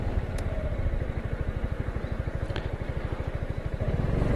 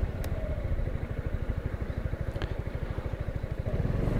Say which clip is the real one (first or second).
first